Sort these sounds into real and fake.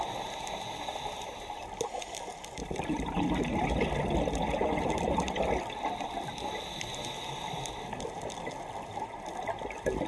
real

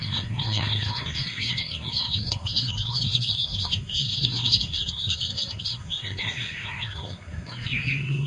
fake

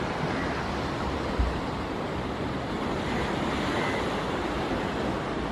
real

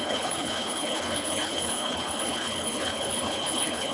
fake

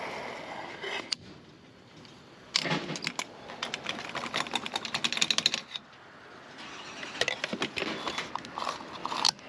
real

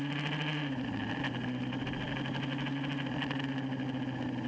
real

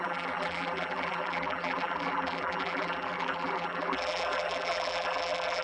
fake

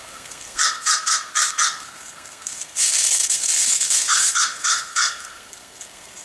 fake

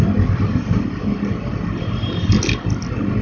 real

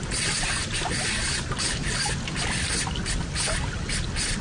real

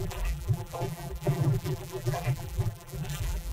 fake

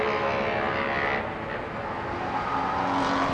real